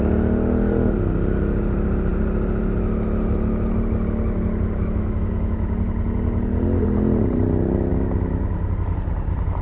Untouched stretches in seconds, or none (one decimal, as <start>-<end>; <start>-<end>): 0.0-4.8; 5.7-7.9; 8.7-9.6